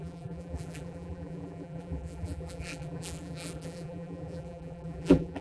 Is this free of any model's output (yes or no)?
no